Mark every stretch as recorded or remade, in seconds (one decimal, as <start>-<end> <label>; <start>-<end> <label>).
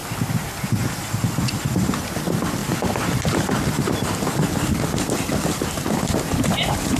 0.0-7.0 recorded